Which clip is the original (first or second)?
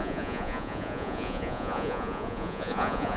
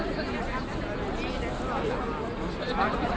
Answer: second